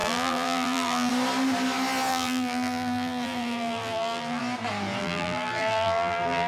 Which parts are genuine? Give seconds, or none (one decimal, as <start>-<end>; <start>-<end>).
1.1-2.1; 4.4-5.0

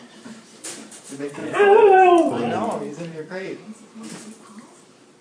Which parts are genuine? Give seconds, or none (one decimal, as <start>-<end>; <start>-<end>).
none